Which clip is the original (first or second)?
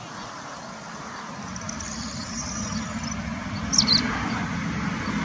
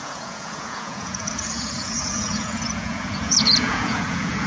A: first